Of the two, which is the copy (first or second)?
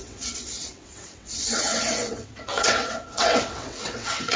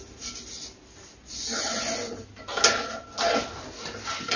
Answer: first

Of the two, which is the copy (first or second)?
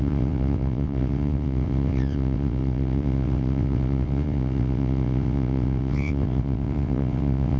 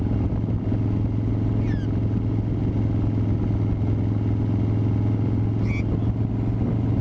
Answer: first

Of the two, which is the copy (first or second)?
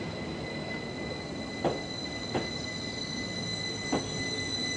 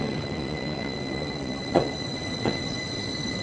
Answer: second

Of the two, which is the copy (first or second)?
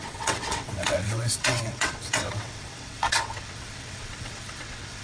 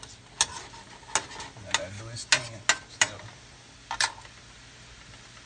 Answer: first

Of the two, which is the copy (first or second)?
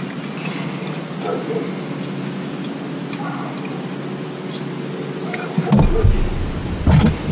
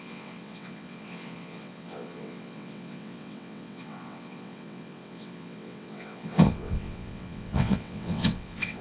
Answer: second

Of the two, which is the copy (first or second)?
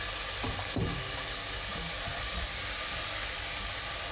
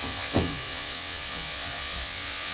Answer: second